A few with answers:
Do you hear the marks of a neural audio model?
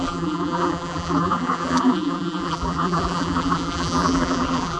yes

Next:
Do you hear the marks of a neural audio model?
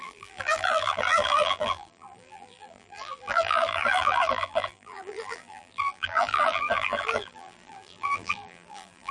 yes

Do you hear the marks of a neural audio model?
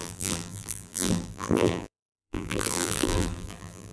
yes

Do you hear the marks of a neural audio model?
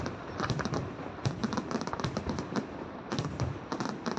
no